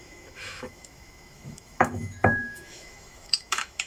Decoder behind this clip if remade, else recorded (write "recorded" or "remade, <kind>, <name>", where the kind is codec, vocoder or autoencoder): remade, autoencoder, DAC-VAE